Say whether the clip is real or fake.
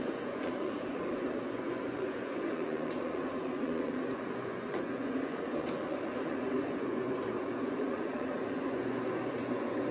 fake